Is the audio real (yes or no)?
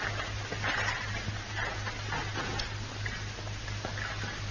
yes